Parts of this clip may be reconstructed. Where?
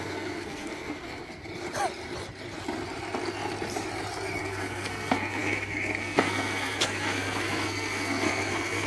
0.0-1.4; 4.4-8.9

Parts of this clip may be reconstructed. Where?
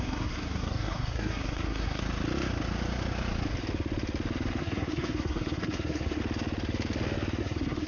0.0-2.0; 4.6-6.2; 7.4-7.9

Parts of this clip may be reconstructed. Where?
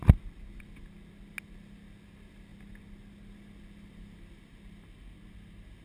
none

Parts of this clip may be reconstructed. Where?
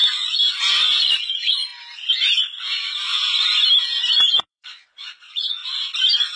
0.7-1.7; 4.5-5.6